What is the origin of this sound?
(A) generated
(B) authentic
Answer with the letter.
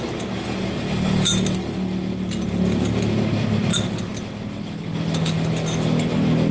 B